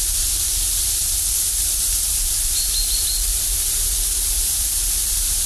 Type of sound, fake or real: fake